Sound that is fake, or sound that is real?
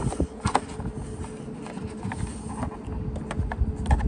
real